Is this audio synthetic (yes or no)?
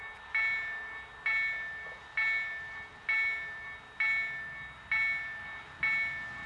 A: no